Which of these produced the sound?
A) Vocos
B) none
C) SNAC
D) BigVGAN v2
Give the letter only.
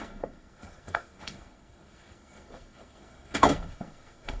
C